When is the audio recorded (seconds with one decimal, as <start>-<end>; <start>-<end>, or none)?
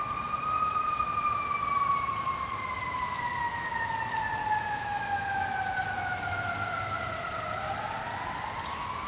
0.0-3.3; 3.9-4.4; 5.4-9.1